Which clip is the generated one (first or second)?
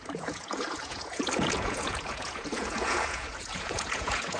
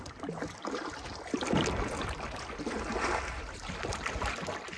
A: first